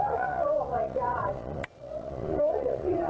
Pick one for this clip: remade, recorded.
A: remade